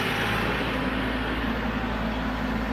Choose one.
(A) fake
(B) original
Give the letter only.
B